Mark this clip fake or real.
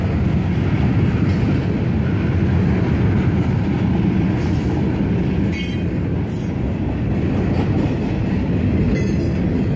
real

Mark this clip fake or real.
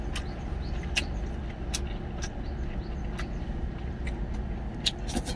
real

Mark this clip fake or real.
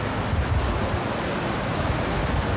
real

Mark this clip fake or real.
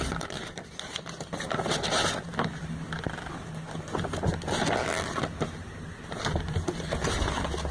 real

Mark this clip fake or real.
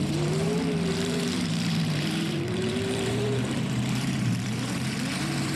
fake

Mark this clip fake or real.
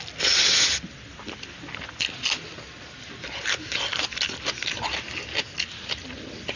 real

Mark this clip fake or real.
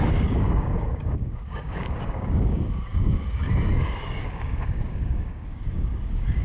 fake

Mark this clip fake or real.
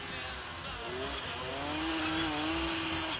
real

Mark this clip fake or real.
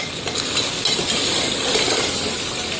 real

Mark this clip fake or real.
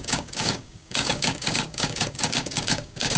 fake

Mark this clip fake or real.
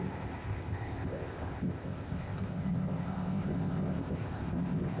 fake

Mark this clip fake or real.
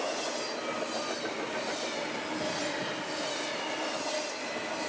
real